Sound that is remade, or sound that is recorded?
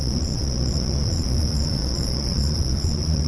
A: remade